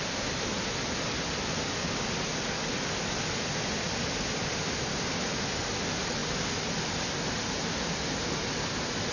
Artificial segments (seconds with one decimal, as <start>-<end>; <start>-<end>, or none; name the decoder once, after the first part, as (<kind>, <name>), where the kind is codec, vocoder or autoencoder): none